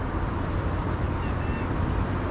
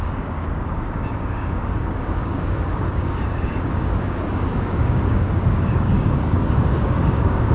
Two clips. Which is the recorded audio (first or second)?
first